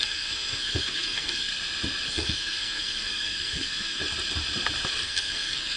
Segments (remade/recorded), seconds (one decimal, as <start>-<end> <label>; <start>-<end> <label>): 0.0-1.5 remade; 1.5-2.1 recorded; 2.1-4.0 remade; 4.0-5.0 recorded; 5.0-5.8 remade